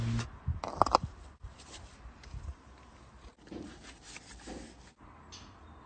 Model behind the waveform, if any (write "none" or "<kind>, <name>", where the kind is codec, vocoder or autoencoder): none